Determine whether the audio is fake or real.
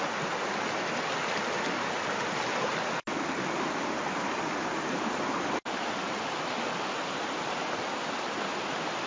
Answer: real